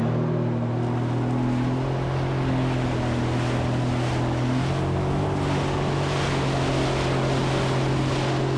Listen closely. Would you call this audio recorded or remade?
recorded